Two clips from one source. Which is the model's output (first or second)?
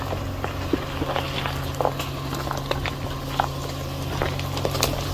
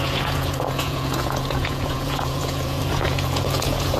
second